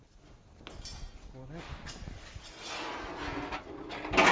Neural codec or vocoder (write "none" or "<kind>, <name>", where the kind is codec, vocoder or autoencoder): none